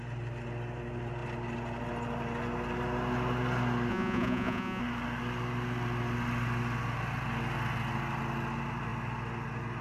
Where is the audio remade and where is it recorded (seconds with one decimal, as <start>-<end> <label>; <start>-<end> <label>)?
0.0-3.9 recorded; 3.9-4.8 remade; 4.8-9.8 recorded